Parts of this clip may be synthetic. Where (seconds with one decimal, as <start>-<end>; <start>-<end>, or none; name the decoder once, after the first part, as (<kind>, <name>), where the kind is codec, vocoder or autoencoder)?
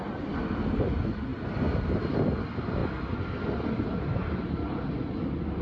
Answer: none